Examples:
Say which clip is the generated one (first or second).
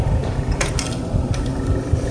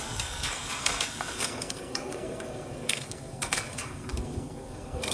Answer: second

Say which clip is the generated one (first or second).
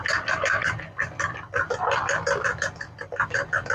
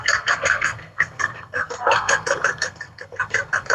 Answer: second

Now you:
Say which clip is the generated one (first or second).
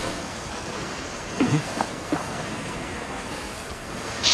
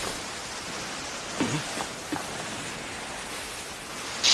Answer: first